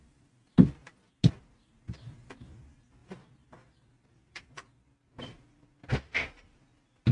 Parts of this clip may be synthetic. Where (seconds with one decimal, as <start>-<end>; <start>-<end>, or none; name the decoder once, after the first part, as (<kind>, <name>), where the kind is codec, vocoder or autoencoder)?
none